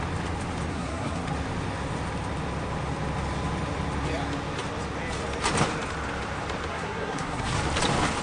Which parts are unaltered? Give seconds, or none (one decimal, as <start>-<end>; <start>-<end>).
0.0-0.7; 1.2-6.7; 7.6-8.2